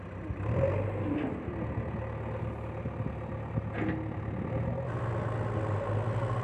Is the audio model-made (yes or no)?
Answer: no